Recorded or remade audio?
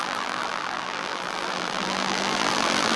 remade